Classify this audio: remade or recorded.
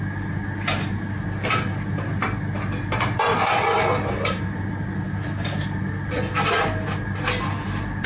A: recorded